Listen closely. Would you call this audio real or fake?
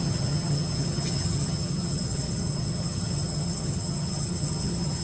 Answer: fake